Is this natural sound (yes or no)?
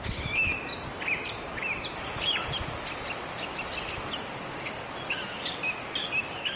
yes